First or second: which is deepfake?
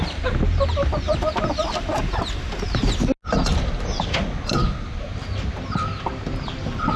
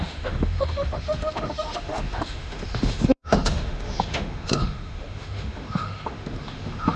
second